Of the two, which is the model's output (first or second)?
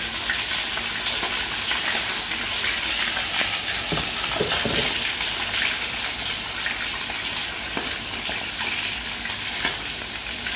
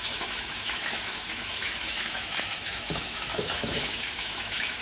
second